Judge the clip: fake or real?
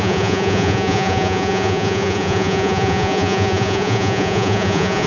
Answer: fake